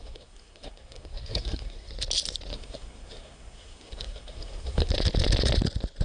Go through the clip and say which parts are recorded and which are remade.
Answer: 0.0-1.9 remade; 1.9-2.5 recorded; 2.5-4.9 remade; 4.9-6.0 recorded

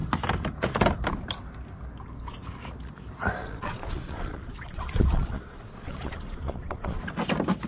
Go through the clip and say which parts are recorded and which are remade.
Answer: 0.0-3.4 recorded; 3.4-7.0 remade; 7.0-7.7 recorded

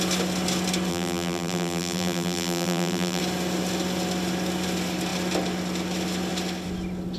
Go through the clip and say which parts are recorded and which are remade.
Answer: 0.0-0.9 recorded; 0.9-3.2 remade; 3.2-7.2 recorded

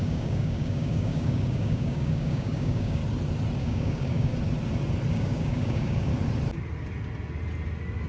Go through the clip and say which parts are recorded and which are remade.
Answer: 0.0-3.0 remade; 3.0-3.6 recorded; 3.6-4.3 remade; 4.3-5.1 recorded; 5.1-6.1 remade; 6.1-8.1 recorded

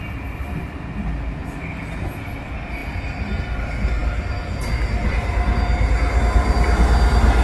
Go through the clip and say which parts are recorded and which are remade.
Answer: 0.0-7.4 recorded

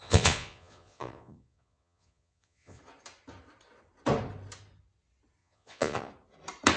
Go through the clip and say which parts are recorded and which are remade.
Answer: 0.0-2.8 remade; 2.8-5.4 recorded; 5.4-6.1 remade; 6.1-6.8 recorded

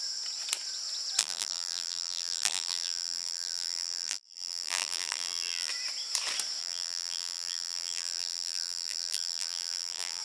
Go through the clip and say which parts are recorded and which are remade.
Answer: 0.0-1.2 recorded; 1.2-5.7 remade; 5.7-6.6 recorded; 6.6-10.2 remade

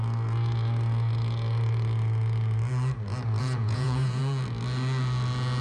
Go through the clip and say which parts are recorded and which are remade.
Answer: 0.0-3.4 recorded; 3.4-4.2 remade; 4.2-5.6 recorded